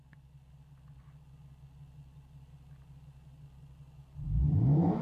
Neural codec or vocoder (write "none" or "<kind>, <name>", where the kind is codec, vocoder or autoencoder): none